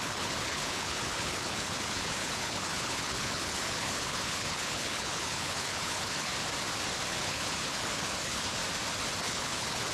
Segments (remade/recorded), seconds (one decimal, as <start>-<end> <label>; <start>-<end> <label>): 0.0-6.3 remade; 6.3-7.1 recorded; 7.1-8.6 remade; 8.6-9.2 recorded; 9.2-9.9 remade